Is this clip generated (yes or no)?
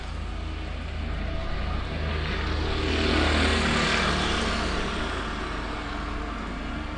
no